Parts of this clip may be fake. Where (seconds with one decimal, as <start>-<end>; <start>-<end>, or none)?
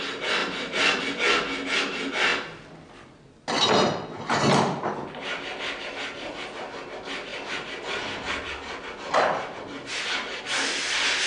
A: 0.4-1.0